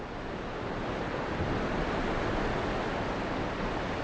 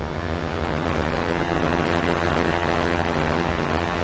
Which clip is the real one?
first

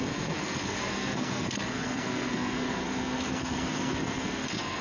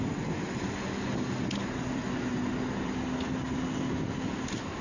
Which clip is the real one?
second